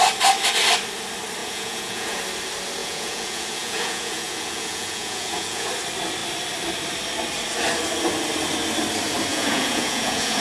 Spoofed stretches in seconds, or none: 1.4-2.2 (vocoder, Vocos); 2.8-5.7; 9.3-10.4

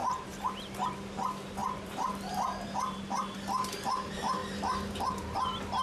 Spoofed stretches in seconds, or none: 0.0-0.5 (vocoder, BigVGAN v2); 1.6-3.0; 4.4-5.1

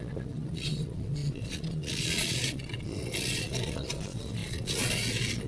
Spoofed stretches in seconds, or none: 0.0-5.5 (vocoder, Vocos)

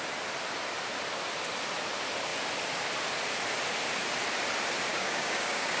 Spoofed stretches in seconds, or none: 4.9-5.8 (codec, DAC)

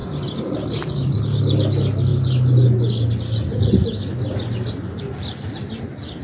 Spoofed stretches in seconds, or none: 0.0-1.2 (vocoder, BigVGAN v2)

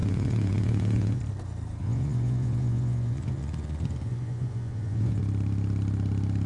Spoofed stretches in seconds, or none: 0.0-1.2 (vocoder, Vocos); 1.8-5.2

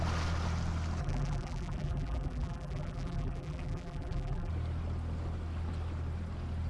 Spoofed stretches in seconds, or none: 1.0-4.5 (vocoder, BigVGAN v2)